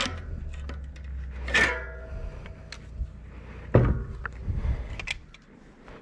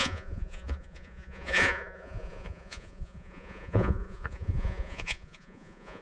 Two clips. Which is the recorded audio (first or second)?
first